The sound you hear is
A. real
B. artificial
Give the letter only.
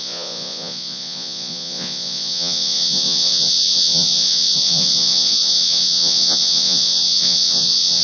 B